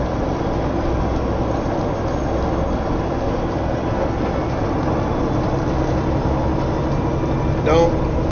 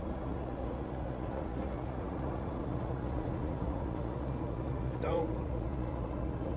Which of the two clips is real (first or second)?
first